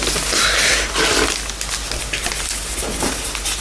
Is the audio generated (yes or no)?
no